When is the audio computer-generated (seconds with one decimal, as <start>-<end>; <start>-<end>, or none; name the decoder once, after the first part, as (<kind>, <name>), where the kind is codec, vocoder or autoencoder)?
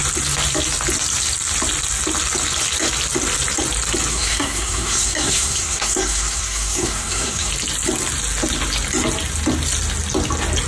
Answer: 4.1-7.5 (codec, SNAC)